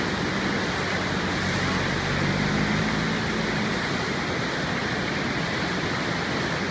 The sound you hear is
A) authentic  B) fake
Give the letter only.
A